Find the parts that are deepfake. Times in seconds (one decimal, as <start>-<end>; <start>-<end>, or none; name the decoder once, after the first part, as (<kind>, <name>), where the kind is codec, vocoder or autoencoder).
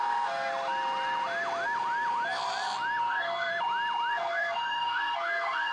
0.0-0.5 (codec, SNAC); 3.0-3.5; 4.1-5.7